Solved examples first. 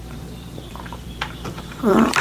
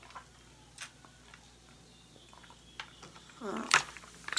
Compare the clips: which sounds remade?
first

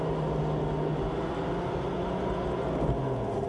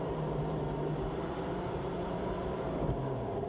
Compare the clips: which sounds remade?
second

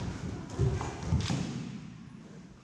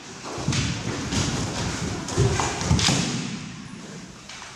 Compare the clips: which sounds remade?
second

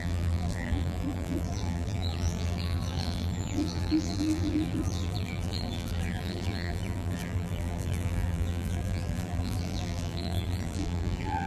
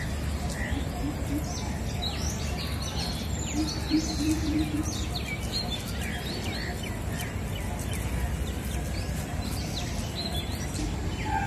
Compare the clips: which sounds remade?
first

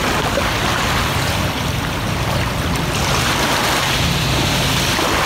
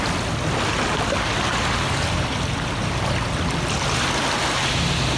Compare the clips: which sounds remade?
first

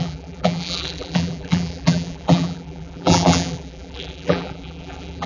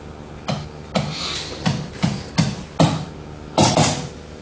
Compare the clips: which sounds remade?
first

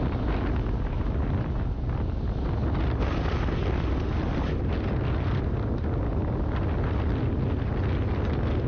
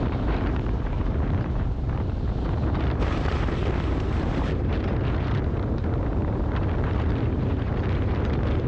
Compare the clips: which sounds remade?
second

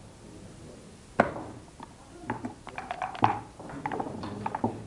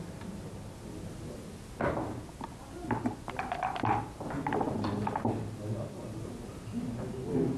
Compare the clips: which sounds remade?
first